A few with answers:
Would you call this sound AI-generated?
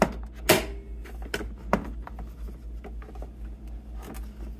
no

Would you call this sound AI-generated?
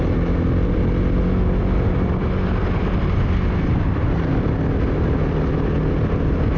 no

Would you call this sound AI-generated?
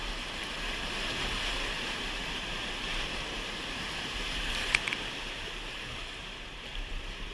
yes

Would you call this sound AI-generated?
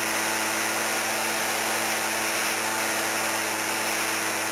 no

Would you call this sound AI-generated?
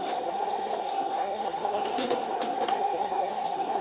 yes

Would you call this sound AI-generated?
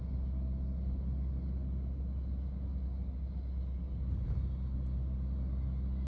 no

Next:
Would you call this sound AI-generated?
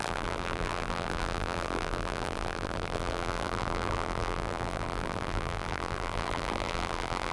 yes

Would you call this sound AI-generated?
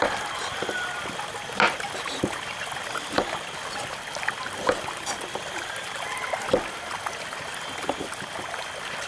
no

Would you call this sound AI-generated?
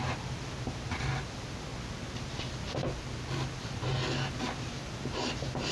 no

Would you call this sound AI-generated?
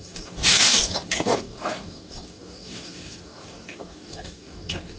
yes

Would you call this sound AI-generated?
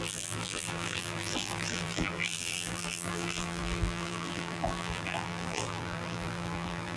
yes